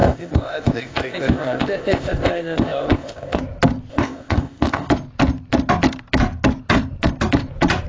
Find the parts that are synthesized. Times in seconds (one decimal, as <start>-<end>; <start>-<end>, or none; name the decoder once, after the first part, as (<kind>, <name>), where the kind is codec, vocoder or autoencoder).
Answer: 0.0-3.4 (codec, ZipCodec); 3.9-4.9